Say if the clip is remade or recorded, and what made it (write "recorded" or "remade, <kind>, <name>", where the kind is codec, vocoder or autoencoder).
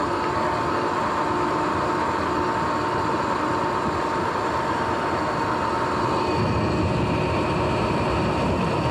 recorded